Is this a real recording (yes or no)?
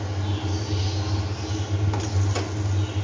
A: yes